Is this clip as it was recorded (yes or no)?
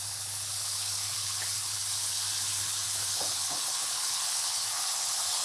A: no